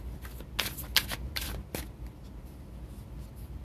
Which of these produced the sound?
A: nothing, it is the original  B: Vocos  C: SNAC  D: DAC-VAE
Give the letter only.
A